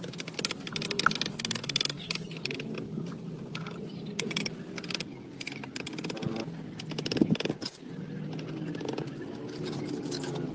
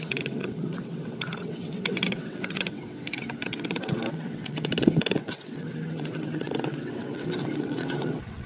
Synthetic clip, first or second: second